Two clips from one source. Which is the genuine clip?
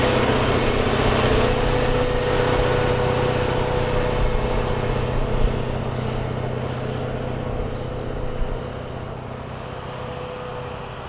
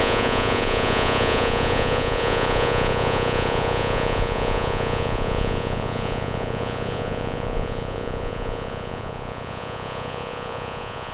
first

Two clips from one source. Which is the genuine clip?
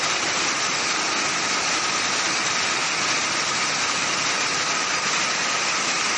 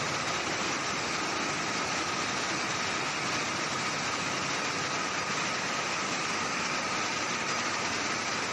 second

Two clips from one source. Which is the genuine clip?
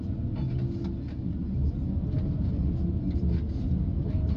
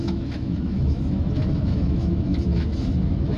first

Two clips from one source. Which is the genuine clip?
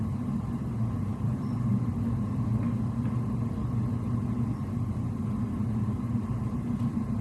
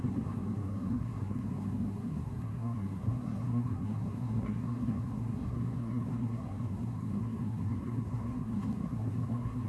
first